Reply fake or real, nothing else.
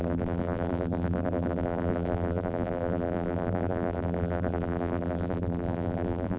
fake